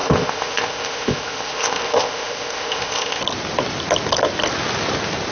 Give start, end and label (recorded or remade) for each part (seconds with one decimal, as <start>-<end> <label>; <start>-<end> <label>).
0.0-3.2 remade; 3.2-5.3 recorded